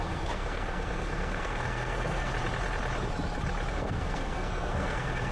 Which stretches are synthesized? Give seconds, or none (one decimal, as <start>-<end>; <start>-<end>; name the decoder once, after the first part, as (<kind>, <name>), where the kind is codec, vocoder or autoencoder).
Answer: 0.0-2.3 (codec, SNAC); 3.7-5.3